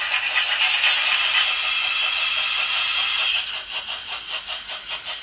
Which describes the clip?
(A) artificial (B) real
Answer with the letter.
B